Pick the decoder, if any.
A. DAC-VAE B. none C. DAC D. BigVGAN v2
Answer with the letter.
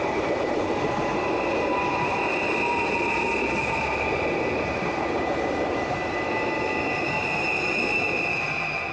D